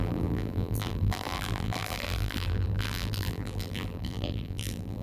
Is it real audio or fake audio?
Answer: fake